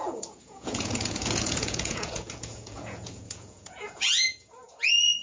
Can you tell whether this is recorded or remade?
remade